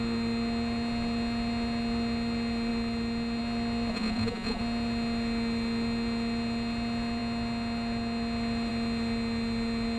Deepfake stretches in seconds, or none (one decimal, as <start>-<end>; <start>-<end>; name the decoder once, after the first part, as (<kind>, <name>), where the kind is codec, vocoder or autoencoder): 3.9-4.6 (vocoder, Vocos)